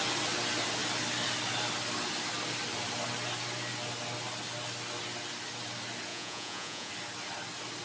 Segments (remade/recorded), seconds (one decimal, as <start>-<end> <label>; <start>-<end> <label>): 0.0-6.1 recorded; 6.1-6.9 remade; 6.9-7.8 recorded